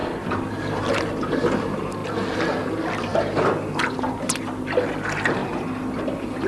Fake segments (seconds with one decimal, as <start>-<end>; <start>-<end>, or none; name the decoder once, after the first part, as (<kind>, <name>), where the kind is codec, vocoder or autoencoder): none